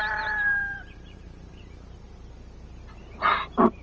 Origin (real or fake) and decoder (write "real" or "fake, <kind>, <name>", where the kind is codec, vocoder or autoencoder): fake, vocoder, BigVGAN v2